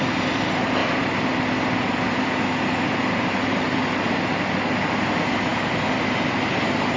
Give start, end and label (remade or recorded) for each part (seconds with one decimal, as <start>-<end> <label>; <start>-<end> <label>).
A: 0.0-7.0 recorded